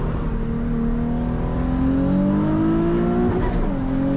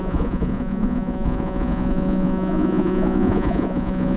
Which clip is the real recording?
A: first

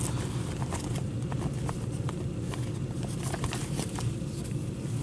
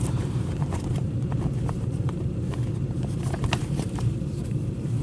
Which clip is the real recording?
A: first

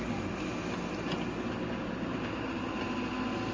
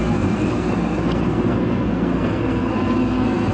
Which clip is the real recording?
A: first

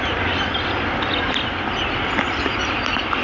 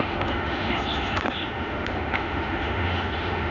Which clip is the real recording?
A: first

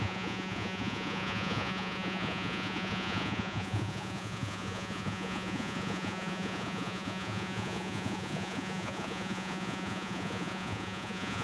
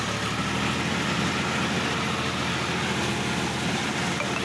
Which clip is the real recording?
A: second